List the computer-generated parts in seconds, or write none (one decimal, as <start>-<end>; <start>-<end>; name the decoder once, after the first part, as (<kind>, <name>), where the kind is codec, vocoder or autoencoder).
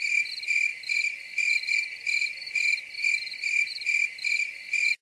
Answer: none